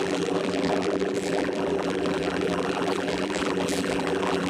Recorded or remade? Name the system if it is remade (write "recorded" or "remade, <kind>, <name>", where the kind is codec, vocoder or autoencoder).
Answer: remade, vocoder, BigVGAN v2